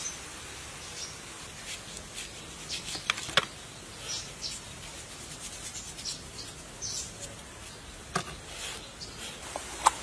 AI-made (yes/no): no